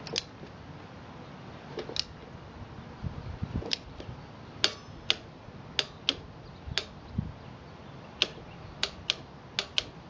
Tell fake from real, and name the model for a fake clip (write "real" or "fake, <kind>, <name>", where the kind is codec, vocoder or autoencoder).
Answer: real